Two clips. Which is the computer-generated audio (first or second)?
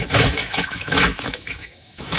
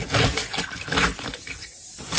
first